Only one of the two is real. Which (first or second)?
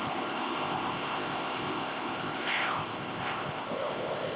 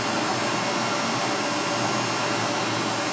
second